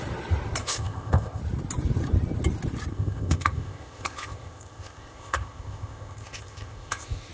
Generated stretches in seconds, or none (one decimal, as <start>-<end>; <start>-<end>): 0.6-1.4; 2.9-7.3